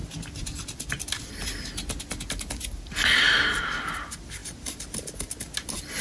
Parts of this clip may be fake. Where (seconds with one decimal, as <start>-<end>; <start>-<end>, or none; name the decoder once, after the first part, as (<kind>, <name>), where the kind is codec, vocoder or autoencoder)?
none